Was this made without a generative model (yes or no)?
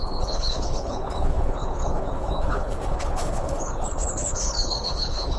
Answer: no